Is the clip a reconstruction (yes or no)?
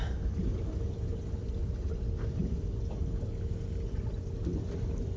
no